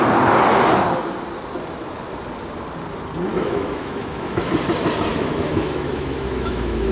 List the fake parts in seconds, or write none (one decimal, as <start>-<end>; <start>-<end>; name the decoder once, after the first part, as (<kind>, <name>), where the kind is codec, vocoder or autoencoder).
3.3-4.5 (autoencoder, DAC-VAE); 5.1-6.9